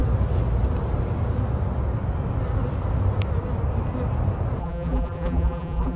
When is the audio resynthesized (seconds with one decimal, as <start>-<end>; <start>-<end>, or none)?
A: 4.6-6.0